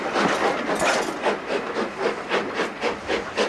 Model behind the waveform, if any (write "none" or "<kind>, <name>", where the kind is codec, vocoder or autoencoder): none